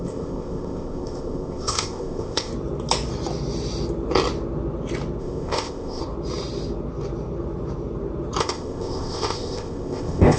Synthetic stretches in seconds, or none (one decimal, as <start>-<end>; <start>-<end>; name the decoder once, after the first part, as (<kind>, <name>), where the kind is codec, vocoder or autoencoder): 0.0-2.5 (codec, ZipCodec); 5.2-6.0; 8.4-10.4